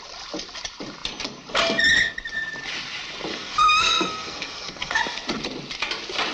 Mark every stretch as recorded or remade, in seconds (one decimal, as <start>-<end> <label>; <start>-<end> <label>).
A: 0.0-3.3 recorded; 3.3-5.0 remade; 5.0-6.3 recorded